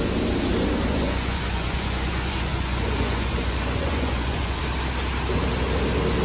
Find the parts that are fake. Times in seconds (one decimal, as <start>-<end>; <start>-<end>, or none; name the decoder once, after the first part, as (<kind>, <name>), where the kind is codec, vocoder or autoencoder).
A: 0.9-4.6 (vocoder, Vocos)